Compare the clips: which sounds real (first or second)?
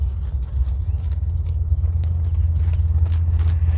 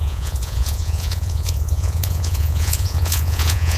first